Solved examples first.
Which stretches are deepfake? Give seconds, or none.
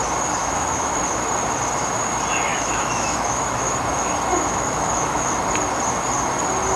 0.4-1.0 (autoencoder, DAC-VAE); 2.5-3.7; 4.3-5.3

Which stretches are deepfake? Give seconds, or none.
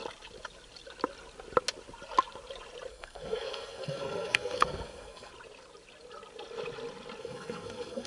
2.9-5.3 (codec, SNAC); 7.2-8.1